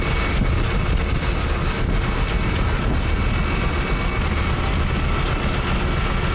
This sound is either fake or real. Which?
real